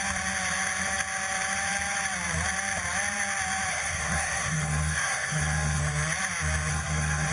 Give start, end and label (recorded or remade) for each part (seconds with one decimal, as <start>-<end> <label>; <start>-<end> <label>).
0.0-3.7 recorded; 3.7-5.8 remade; 5.8-6.7 recorded; 6.7-7.3 remade